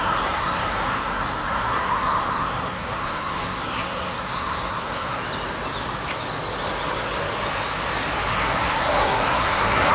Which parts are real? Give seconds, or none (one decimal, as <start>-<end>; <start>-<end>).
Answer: 5.2-8.3